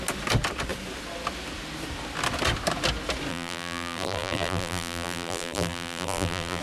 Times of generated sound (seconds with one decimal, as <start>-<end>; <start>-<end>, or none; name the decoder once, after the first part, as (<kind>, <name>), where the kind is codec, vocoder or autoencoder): 3.3-6.6 (vocoder, BigVGAN v2)